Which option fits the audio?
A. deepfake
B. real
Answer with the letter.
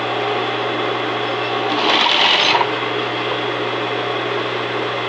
B